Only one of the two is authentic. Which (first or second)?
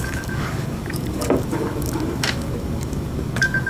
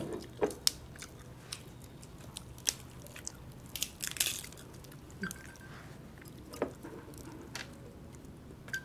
second